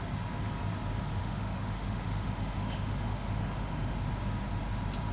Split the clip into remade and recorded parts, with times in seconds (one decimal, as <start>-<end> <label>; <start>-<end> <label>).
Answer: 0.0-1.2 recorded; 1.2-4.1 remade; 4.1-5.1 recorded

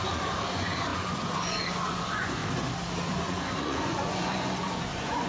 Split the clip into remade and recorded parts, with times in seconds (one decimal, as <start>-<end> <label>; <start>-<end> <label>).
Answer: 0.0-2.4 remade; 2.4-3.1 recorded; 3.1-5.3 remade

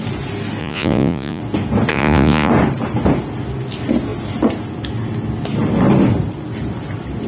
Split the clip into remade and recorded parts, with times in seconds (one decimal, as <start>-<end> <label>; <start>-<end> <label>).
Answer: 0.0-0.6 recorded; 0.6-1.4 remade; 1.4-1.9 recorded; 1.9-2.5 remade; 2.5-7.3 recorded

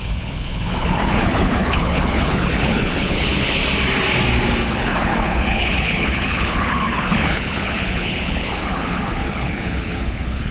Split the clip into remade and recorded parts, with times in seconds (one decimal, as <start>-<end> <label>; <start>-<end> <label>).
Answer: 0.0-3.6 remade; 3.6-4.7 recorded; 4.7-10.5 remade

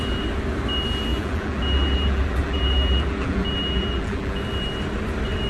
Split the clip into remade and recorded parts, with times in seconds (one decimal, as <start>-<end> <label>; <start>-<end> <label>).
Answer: 0.0-1.1 recorded; 1.1-4.4 remade; 4.4-5.5 recorded

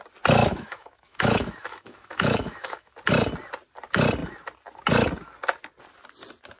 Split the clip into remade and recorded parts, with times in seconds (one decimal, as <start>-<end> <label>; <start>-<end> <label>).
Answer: 0.0-0.4 recorded; 0.4-2.9 remade; 2.9-6.6 recorded

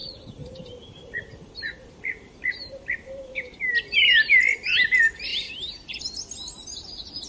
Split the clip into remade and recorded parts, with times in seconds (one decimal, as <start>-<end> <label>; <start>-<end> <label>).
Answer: 0.0-4.4 remade; 4.4-5.3 recorded; 5.3-6.0 remade; 6.0-7.3 recorded